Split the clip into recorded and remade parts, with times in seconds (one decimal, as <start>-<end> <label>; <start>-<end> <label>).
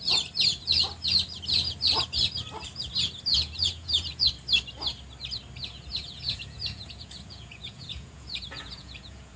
0.0-3.3 recorded; 3.3-4.3 remade; 4.3-5.9 recorded; 5.9-9.4 remade